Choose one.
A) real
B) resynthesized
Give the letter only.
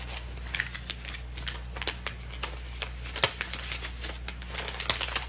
A